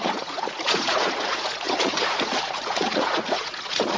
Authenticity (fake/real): fake